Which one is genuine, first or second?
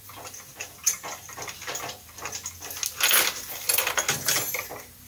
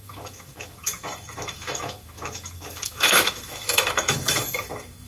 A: first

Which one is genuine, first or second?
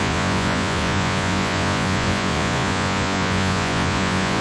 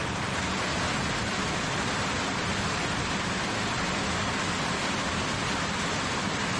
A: second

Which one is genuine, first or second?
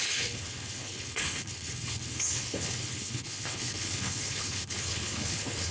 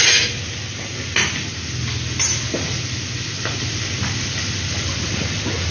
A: second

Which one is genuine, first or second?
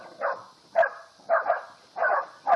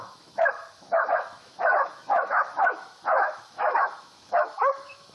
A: first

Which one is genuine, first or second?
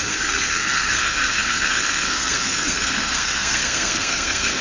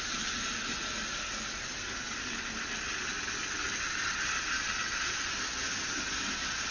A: second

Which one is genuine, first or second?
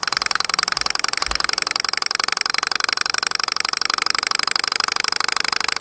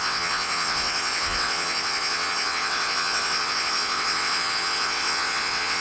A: first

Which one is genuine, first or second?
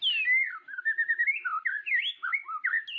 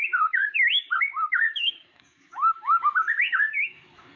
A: first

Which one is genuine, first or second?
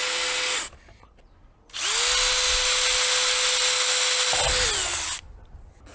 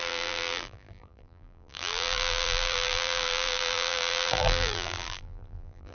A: first